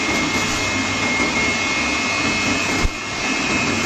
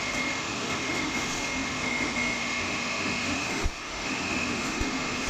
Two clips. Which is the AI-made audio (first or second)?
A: second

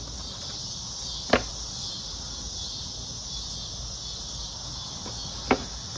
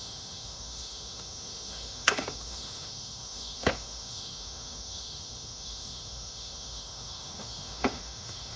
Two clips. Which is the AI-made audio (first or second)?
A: second